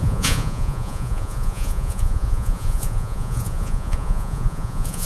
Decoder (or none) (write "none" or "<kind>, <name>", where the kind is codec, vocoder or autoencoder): vocoder, Vocos